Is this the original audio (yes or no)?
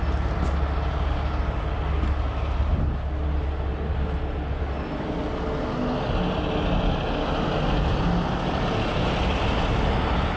yes